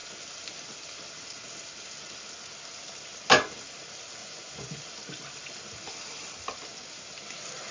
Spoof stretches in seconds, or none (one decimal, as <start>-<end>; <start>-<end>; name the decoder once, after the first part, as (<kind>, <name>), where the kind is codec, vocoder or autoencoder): 4.2-4.8 (vocoder, Vocos)

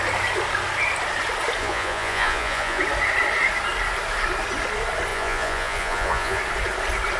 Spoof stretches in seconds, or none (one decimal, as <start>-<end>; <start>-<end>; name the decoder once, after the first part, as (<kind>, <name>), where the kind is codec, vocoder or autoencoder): 1.6-2.8 (vocoder, Vocos); 5.1-6.4

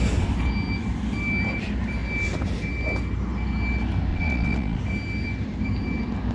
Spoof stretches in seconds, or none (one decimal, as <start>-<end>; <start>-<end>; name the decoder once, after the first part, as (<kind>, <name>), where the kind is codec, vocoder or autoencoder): 4.1-4.8 (vocoder, Vocos)

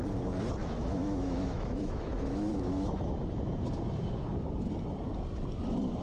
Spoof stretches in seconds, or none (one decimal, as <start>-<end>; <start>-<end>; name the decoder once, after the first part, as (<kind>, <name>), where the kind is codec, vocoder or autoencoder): 0.6-3.1 (autoencoder, DAC-VAE)

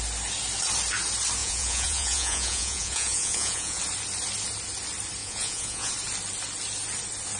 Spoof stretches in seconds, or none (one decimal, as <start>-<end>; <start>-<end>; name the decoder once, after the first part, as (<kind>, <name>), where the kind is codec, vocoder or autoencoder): 1.4-3.8 (vocoder, Vocos); 5.2-5.9